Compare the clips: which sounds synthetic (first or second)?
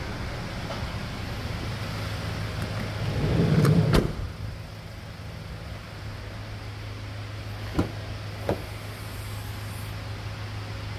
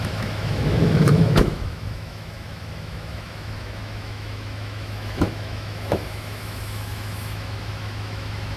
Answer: second